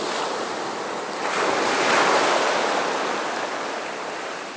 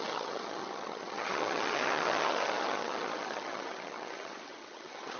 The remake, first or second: second